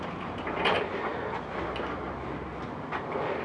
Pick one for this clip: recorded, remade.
recorded